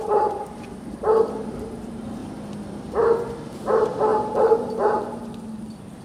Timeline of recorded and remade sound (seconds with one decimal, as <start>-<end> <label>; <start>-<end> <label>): 0.0-2.2 remade; 2.2-3.5 recorded; 3.5-6.0 remade